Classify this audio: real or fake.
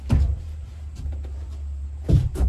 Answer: fake